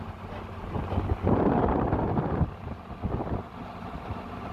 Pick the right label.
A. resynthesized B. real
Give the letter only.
B